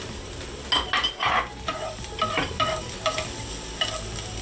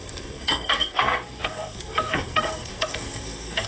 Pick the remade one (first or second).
second